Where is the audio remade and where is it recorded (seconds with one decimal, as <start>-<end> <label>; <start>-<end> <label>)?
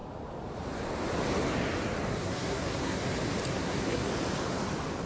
0.0-2.1 recorded; 2.1-3.0 remade; 3.0-3.5 recorded; 3.5-4.1 remade; 4.1-5.1 recorded